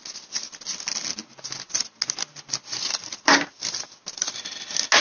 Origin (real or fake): real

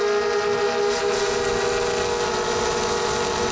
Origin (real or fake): real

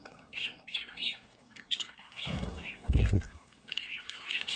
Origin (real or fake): fake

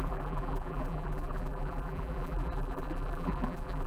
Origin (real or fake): fake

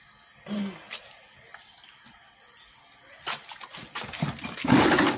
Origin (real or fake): real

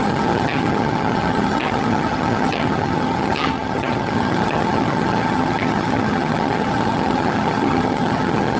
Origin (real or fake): fake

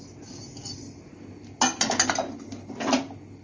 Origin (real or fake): real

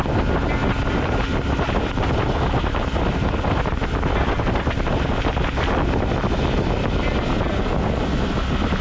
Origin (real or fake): real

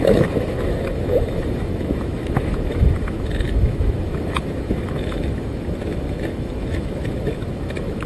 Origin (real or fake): fake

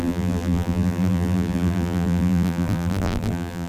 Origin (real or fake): fake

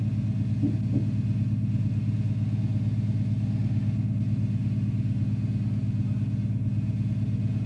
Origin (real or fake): real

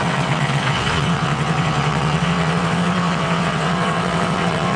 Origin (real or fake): fake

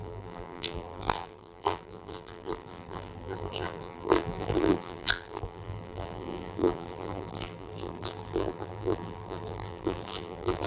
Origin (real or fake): fake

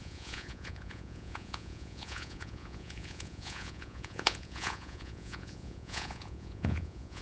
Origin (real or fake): fake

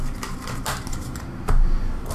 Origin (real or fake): real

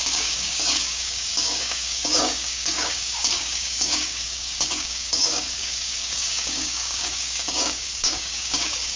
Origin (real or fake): fake